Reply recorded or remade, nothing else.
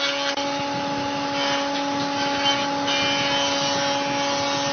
recorded